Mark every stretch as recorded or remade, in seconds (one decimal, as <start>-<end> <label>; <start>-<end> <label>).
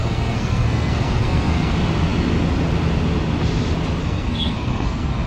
0.0-1.7 remade; 1.7-4.0 recorded; 4.0-5.3 remade